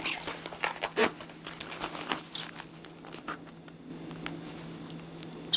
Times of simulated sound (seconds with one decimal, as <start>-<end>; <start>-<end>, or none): none